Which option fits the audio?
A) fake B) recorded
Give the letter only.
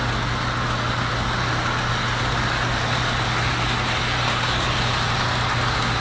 B